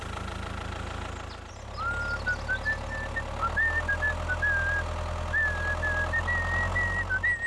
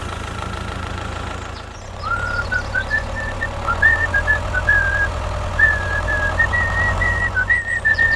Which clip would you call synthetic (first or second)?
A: second